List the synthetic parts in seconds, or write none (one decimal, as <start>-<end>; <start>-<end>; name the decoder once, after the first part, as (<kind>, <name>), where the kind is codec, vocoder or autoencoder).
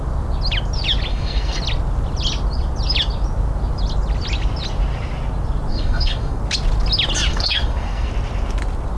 1.1-1.6 (codec, SNAC); 5.7-6.4; 7.3-8.1